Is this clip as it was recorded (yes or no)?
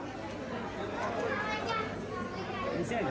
yes